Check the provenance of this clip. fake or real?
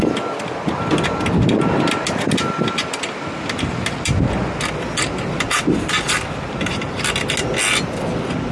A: real